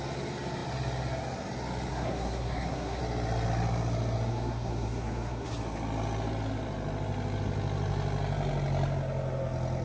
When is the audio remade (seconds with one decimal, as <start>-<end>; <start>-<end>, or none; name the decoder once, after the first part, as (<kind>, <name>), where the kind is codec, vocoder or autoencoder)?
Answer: 1.9-3.0 (codec, SNAC); 4.3-5.5